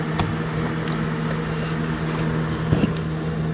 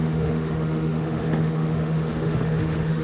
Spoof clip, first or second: second